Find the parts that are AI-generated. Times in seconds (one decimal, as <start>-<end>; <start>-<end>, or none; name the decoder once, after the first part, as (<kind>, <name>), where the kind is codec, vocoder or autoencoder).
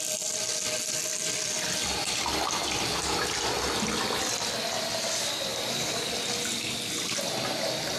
5.5-6.1 (codec, DAC)